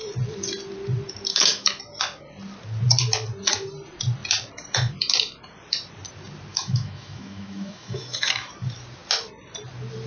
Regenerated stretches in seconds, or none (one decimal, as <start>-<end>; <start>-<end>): 1.3-1.8; 6.5-8.5